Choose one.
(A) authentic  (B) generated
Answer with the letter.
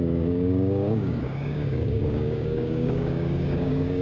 B